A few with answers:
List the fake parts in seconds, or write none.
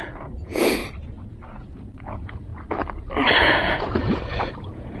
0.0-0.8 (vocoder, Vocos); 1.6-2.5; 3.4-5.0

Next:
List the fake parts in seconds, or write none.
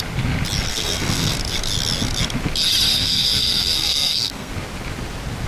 0.7-1.4 (codec, SNAC); 2.9-4.5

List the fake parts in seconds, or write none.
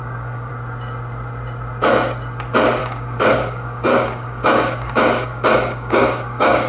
0.0-0.5 (codec, DAC); 2.8-6.7